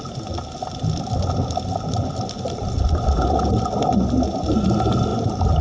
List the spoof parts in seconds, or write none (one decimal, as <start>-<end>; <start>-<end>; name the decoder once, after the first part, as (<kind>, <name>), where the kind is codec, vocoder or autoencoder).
none